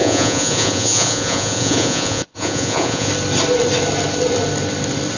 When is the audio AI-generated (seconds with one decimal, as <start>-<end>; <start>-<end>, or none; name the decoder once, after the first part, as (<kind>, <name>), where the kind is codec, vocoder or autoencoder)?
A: 0.0-3.1 (vocoder, Vocos)